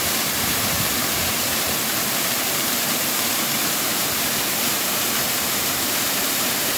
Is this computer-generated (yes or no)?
yes